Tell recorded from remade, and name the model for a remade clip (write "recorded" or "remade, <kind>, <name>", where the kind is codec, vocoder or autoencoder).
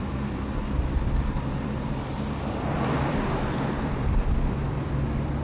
remade, vocoder, BigVGAN v2